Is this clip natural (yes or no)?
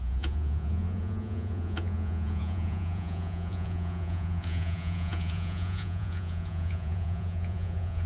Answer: no